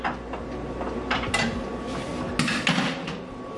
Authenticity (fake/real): real